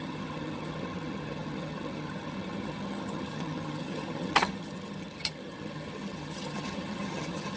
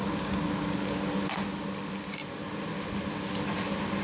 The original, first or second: second